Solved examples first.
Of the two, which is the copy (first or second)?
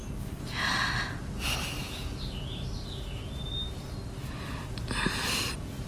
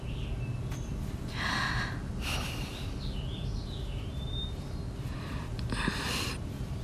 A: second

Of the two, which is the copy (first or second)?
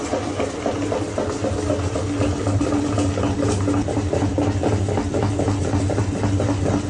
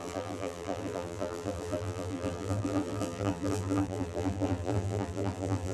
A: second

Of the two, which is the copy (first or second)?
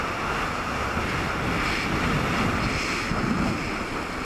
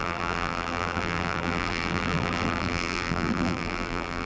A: second